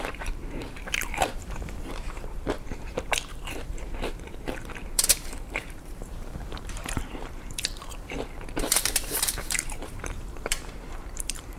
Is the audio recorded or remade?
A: remade